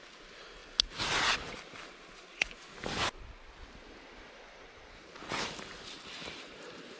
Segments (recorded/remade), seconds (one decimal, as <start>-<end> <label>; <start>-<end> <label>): 0.0-0.6 remade; 0.6-3.9 recorded; 3.9-7.0 remade